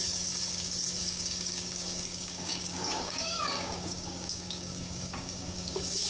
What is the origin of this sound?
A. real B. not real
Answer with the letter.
B